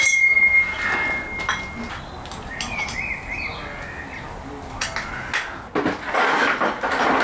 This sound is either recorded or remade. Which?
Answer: recorded